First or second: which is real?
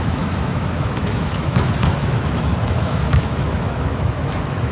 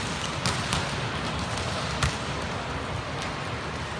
second